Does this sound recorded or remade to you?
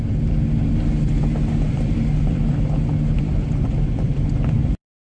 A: remade